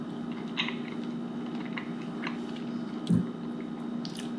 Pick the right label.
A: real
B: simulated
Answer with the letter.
A